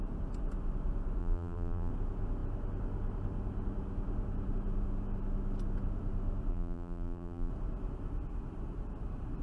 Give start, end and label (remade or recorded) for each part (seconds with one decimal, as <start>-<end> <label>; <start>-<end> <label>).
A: 0.0-1.2 recorded; 1.2-1.9 remade; 1.9-6.5 recorded; 6.5-7.5 remade; 7.5-9.4 recorded